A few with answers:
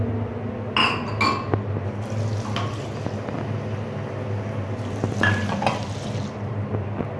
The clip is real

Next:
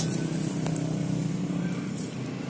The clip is real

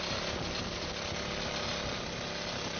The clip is real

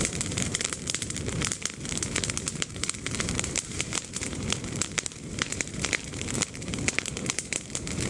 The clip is fake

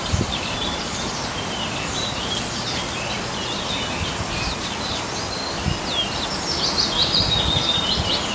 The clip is real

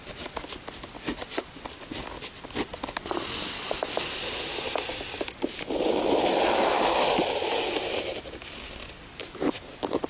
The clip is real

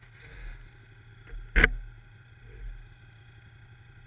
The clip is real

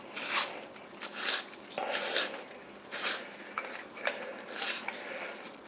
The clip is real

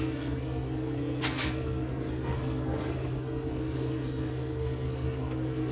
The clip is fake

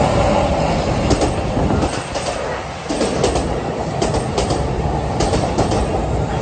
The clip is real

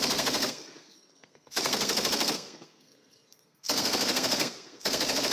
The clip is fake